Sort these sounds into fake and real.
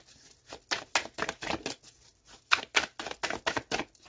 real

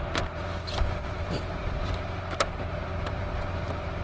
fake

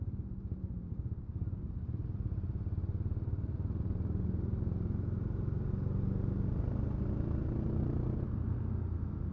real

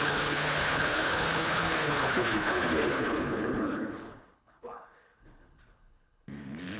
fake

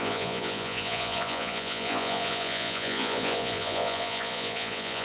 fake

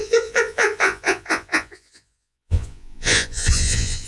fake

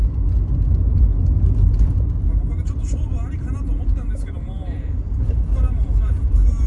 real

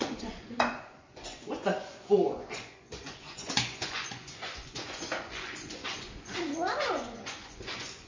fake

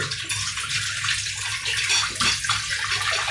real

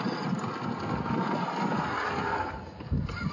real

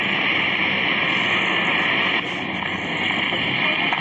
real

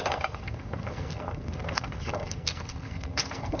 fake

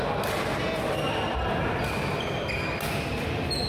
real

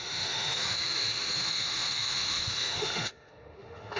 fake